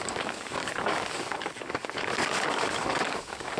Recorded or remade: remade